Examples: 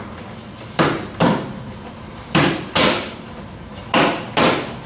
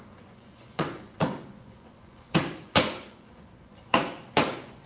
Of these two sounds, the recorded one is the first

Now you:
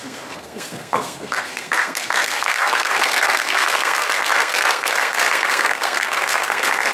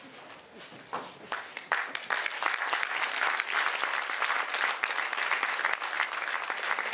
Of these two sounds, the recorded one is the second